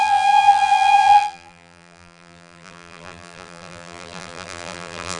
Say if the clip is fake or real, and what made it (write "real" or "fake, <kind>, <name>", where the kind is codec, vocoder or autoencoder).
fake, vocoder, BigVGAN v2